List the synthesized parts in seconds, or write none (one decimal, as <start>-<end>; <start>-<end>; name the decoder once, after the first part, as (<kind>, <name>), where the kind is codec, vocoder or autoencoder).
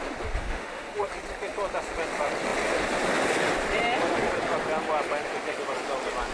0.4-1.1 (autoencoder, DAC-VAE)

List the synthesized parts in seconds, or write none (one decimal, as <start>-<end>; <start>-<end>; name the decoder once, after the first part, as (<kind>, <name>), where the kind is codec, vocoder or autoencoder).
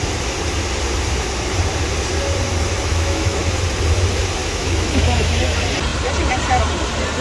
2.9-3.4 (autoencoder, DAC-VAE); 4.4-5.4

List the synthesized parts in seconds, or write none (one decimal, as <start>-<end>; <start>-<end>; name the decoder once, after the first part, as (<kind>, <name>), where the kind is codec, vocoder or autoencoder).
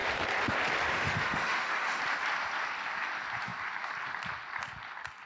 0.9-2.0 (autoencoder, DAC-VAE)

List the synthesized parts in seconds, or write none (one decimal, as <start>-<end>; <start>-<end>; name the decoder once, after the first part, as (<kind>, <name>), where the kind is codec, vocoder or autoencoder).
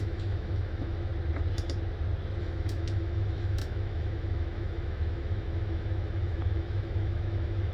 0.0-1.1 (autoencoder, DAC-VAE); 2.4-7.7